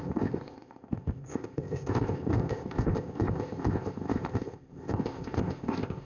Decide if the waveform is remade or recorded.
remade